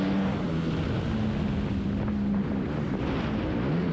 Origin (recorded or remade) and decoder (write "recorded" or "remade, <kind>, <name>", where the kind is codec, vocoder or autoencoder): recorded